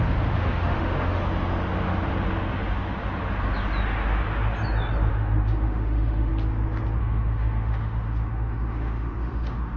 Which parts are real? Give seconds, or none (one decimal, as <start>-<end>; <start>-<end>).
1.2-5.1; 6.3-7.0